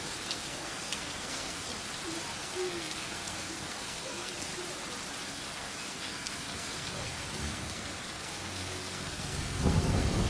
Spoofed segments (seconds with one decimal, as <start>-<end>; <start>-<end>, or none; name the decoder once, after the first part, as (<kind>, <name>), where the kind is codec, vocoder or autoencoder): 0.0-1.7 (codec, SNAC); 2.4-4.5; 5.3-10.3